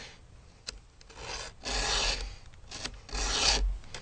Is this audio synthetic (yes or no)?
no